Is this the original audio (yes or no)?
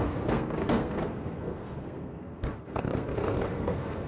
no